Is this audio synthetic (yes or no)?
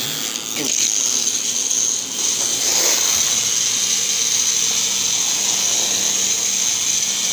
no